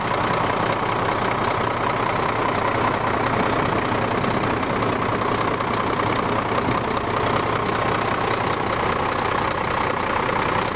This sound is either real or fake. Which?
real